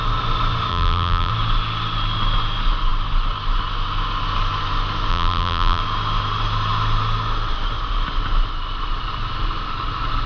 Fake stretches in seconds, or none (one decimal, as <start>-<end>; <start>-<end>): 0.7-1.3; 5.1-5.8